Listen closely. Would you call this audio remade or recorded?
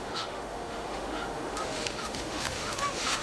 remade